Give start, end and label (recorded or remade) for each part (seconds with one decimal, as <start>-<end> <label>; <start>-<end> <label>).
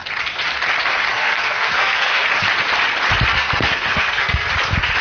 0.0-1.1 recorded; 1.1-2.3 remade; 2.3-3.3 recorded; 3.3-4.5 remade; 4.5-5.0 recorded